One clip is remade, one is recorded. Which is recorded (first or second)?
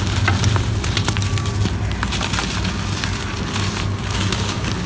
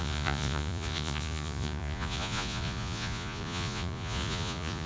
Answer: first